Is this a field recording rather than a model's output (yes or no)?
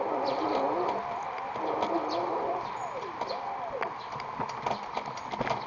yes